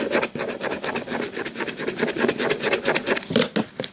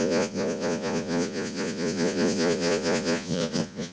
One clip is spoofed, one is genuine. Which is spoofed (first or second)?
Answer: second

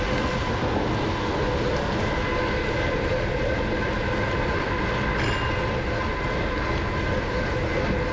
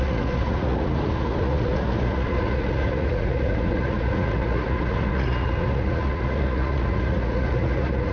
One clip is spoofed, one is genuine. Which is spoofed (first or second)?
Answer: second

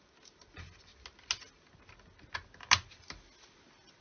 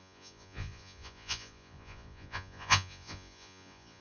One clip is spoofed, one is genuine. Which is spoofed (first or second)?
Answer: second